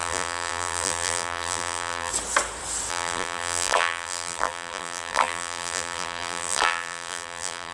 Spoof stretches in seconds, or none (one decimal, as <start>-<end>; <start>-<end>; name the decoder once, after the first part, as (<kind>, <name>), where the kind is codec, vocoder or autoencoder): 0.0-2.1 (vocoder, BigVGAN v2); 2.9-7.7